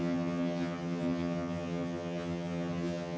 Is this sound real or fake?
fake